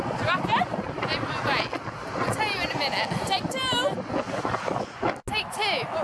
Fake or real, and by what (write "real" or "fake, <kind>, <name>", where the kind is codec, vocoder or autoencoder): real